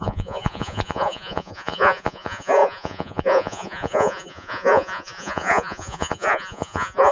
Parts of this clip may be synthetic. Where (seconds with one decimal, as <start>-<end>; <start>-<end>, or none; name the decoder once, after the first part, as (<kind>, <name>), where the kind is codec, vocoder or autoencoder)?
0.0-7.1 (vocoder, Vocos)